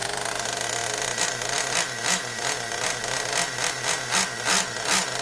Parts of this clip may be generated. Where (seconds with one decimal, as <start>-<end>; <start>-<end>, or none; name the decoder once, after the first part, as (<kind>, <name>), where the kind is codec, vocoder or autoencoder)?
none